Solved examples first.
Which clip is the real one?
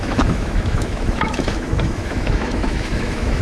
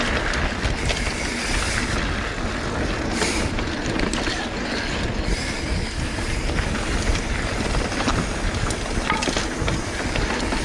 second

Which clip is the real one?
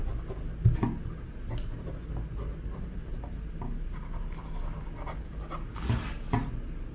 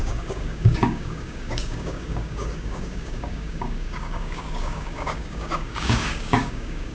first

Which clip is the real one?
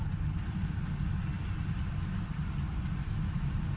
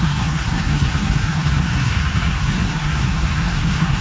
first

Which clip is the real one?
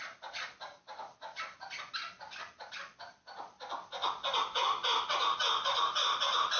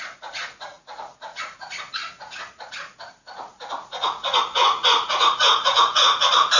first